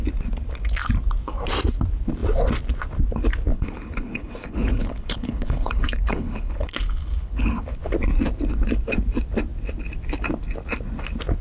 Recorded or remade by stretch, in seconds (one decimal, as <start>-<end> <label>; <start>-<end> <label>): 0.0-3.5 recorded; 3.5-7.9 remade; 7.9-11.4 recorded